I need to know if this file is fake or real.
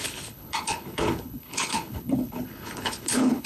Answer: fake